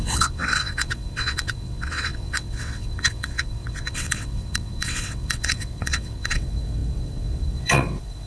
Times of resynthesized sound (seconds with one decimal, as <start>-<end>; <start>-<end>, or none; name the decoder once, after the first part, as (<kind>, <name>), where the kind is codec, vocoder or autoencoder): 0.0-8.3 (vocoder, WaveNeXt)